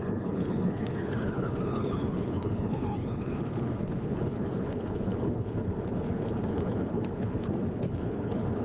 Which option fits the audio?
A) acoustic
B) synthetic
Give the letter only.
B